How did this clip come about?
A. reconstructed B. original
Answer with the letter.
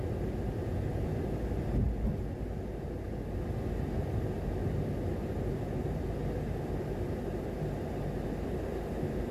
B